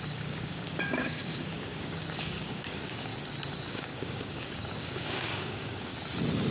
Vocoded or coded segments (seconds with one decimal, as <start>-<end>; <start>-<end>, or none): 0.0-3.1; 3.6-5.9